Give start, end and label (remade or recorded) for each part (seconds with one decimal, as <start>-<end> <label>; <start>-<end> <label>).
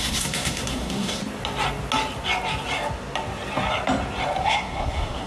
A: 0.0-1.2 remade; 1.2-4.4 recorded; 4.4-5.3 remade